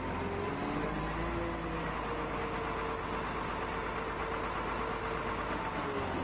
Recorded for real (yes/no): yes